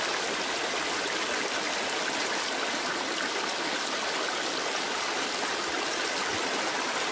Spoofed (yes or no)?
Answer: no